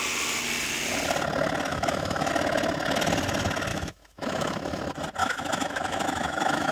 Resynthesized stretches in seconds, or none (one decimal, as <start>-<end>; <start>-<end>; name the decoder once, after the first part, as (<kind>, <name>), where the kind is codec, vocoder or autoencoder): 1.7-2.3 (autoencoder, DAC-VAE); 3.7-4.8; 5.2-6.7